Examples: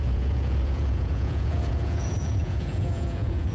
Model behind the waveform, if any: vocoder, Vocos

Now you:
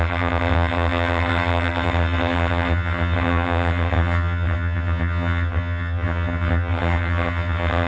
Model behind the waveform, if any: vocoder, HiFi-GAN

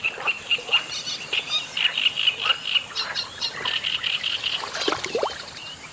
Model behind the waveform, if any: none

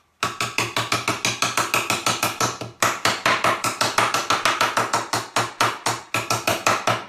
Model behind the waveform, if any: none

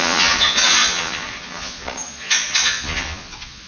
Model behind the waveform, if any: vocoder, Vocos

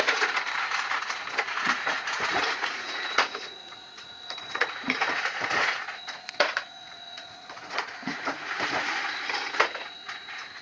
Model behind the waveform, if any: vocoder, Vocos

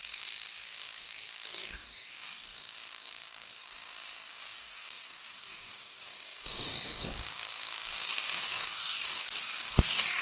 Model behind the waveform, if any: codec, DAC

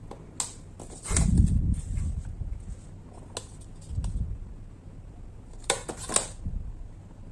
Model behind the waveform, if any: none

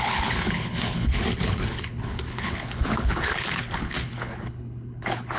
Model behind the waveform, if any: codec, HILCodec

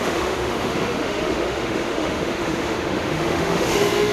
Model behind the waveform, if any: autoencoder, DAC-VAE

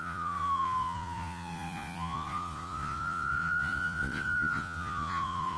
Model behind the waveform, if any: vocoder, Vocos